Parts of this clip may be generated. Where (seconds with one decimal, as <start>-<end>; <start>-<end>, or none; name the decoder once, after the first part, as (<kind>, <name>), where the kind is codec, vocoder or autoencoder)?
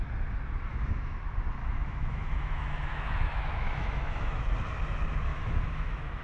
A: 0.7-1.2 (autoencoder, DAC-VAE); 1.6-4.4; 5.3-6.2